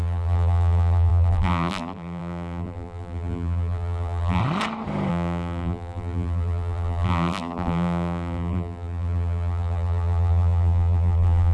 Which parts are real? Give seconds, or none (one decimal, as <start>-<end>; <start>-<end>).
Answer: 4.4-5.1